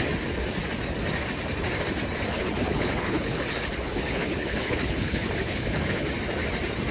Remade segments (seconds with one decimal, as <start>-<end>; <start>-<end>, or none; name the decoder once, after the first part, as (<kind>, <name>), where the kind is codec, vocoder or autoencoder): 2.3-6.1 (codec, HILCodec)